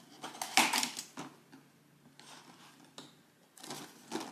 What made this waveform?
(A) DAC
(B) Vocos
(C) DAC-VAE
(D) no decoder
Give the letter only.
D